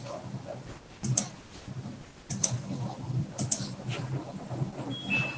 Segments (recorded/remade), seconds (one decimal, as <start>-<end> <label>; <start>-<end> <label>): 0.0-5.4 recorded